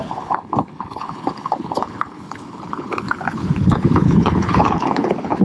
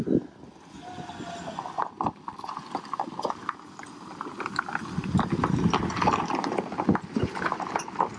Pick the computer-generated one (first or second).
first